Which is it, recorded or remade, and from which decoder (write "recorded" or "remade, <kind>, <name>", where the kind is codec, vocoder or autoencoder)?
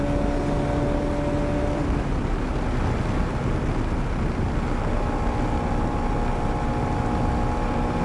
recorded